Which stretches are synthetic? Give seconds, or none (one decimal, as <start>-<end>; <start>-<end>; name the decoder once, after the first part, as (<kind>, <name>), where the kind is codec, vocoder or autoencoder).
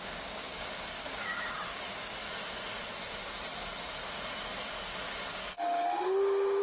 0.0-2.2 (codec, DAC); 5.3-5.8